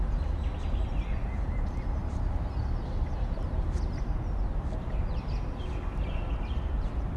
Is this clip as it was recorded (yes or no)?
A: yes